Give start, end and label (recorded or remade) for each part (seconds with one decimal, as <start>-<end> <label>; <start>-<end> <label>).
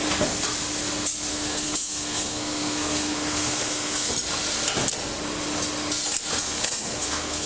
0.0-1.3 recorded; 1.3-4.1 remade; 4.1-6.4 recorded; 6.4-7.5 remade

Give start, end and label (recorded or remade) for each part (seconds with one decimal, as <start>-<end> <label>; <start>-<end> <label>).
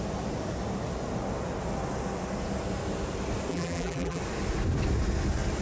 0.0-3.5 recorded; 3.5-4.2 remade; 4.2-5.6 recorded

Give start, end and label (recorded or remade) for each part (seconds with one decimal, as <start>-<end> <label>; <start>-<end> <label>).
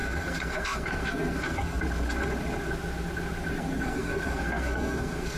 0.0-1.8 remade; 1.8-3.5 recorded; 3.5-5.4 remade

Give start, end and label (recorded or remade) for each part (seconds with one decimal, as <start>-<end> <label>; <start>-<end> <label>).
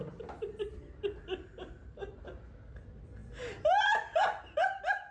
0.0-5.1 recorded